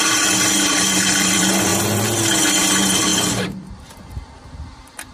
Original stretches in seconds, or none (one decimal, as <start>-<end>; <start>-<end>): 1.7-2.6